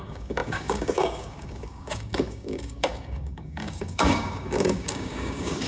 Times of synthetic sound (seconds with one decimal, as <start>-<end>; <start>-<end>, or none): 0.0-5.7